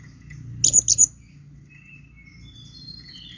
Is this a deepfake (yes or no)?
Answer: no